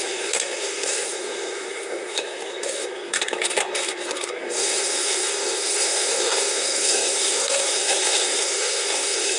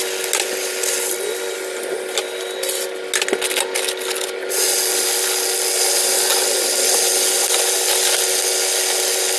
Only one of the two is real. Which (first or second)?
second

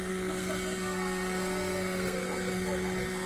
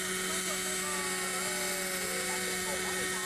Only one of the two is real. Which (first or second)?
second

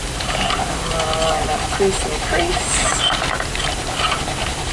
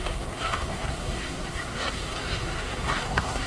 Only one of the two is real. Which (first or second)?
first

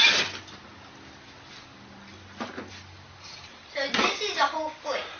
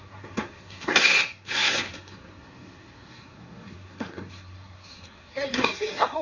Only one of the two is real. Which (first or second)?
first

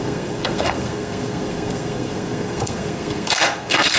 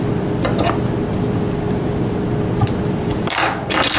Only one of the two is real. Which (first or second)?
second